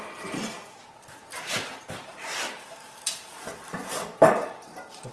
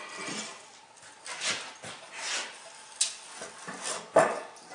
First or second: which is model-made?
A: first